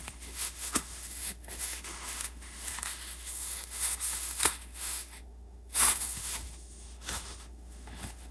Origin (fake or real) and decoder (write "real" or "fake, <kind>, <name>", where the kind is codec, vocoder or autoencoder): fake, autoencoder, DAC-VAE